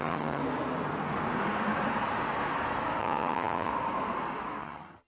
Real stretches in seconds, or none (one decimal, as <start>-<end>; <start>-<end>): 0.4-3.0; 3.7-4.6